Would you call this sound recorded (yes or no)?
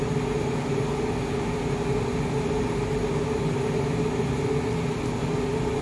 yes